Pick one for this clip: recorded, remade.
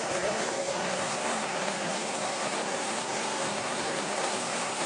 remade